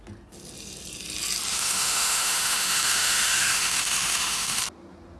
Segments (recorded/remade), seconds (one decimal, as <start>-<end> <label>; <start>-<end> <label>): 0.0-1.5 recorded; 1.5-4.6 remade; 4.6-5.2 recorded